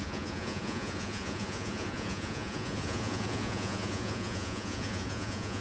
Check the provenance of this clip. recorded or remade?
remade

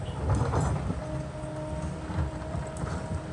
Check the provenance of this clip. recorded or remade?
recorded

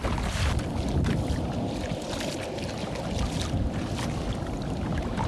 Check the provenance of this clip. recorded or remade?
recorded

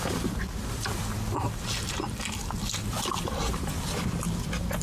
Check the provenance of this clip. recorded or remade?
remade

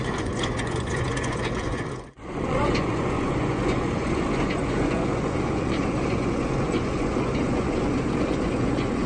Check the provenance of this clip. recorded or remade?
remade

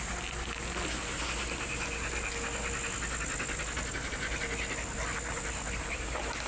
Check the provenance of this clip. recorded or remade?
recorded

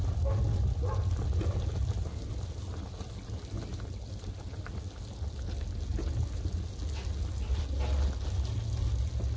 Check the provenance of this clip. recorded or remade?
recorded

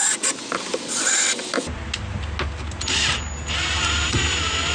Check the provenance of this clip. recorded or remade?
recorded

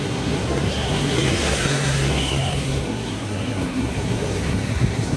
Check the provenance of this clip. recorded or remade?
remade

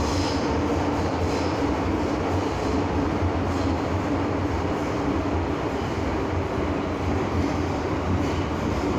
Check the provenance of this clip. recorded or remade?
recorded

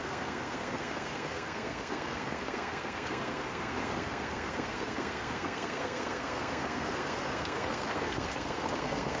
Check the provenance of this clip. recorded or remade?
remade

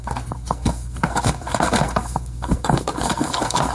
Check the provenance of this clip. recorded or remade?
remade